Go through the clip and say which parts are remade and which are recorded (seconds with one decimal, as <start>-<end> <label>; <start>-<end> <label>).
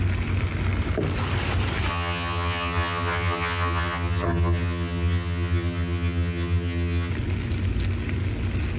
0.0-1.9 recorded; 1.9-7.1 remade; 7.1-8.8 recorded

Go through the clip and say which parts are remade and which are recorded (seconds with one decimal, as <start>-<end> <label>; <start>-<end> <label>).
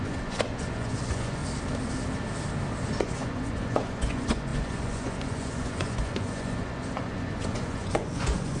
0.0-1.4 remade; 1.4-3.0 recorded; 3.0-8.6 remade